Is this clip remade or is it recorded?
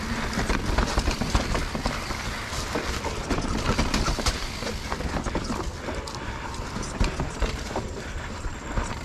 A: recorded